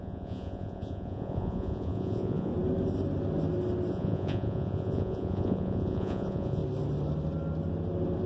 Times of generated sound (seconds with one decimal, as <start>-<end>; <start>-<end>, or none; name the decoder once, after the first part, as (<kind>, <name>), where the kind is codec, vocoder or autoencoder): 0.0-2.5 (vocoder, Vocos); 3.9-6.6